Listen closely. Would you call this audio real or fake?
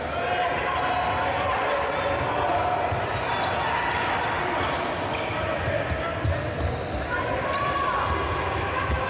real